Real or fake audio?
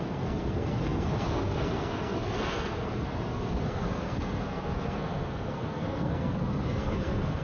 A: fake